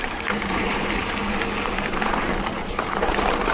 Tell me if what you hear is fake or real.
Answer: fake